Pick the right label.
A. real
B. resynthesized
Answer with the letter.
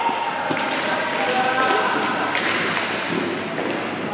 A